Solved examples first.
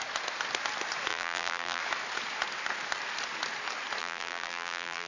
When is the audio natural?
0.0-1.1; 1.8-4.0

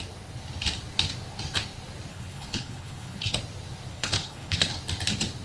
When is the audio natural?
0.0-2.1; 3.4-3.9; 4.7-5.4

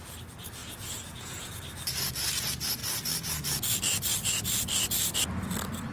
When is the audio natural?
0.0-0.6; 1.5-5.9

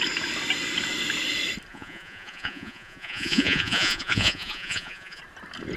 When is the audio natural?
0.0-1.7; 5.2-5.8

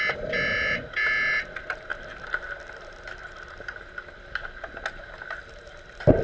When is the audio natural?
0.0-6.2